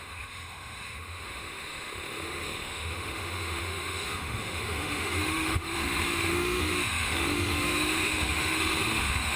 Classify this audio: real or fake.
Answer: fake